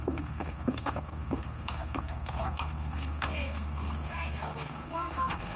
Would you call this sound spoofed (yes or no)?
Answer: yes